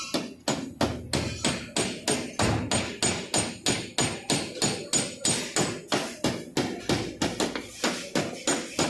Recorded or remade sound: recorded